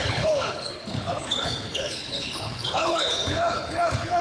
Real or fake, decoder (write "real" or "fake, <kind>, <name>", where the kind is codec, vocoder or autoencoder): fake, codec, HILCodec